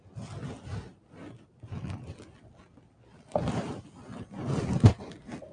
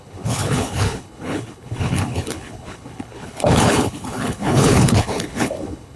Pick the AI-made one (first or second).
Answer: second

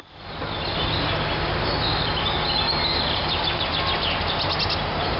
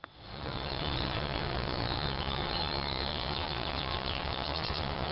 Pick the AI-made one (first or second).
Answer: second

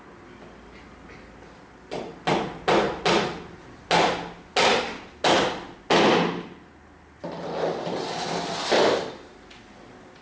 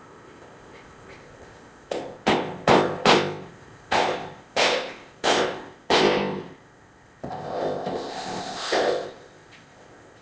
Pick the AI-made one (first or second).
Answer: second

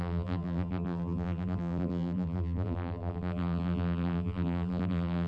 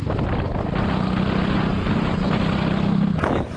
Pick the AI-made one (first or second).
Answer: first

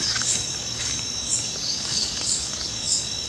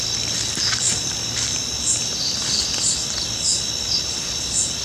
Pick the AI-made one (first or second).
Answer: first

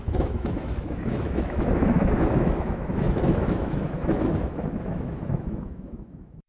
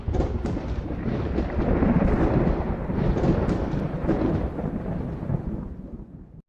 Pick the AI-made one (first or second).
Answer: first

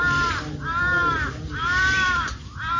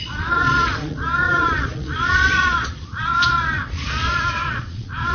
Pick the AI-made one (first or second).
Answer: second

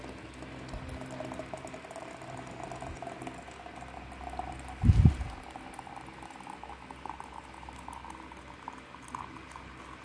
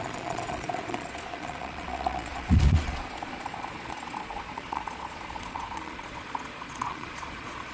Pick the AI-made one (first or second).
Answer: second